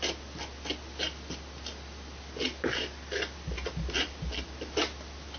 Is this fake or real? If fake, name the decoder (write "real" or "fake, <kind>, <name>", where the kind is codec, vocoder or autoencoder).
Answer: real